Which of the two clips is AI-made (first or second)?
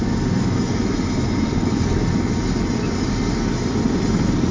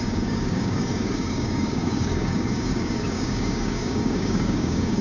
second